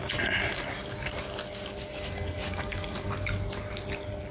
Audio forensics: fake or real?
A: real